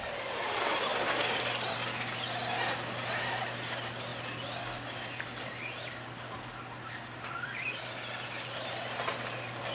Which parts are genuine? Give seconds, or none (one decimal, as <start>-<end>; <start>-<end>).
0.0-9.7